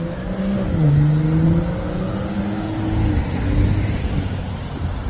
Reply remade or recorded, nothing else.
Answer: recorded